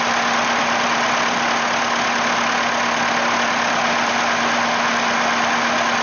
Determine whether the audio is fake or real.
real